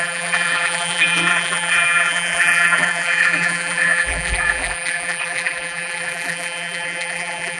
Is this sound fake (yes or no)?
yes